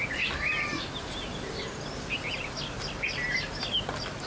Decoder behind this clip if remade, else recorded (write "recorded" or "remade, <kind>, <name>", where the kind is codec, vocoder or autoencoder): recorded